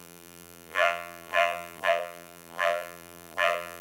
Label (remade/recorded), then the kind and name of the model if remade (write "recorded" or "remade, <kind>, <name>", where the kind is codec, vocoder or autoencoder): remade, vocoder, BigVGAN v2